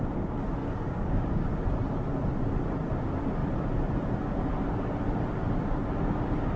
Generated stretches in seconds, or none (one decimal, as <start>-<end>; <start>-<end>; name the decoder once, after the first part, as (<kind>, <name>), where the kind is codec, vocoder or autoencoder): 0.6-1.5 (codec, DAC)